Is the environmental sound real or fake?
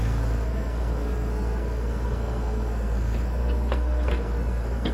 fake